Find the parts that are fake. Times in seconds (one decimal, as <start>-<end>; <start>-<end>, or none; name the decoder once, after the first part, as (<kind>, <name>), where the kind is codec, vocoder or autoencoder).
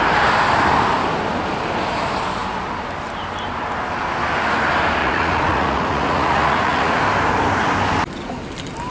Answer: 5.0-7.0 (vocoder, Vocos)